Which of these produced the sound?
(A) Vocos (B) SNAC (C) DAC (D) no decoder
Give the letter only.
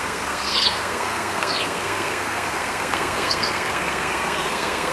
B